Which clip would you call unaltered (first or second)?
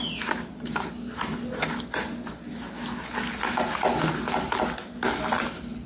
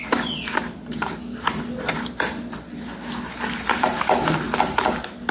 first